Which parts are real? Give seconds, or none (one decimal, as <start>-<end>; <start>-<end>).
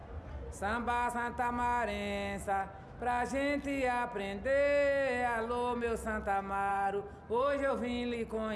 0.0-6.7; 7.7-8.6